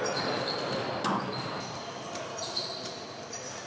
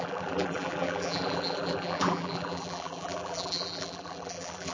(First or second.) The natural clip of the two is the first